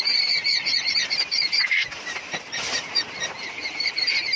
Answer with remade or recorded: recorded